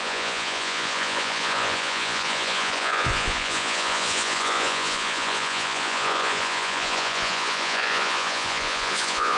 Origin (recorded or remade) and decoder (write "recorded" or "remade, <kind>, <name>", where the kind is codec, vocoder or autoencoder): remade, vocoder, Vocos